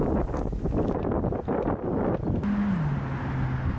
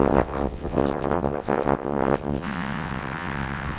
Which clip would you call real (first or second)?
first